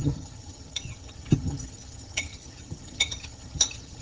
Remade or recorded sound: remade